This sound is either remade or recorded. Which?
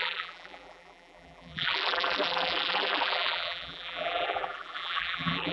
remade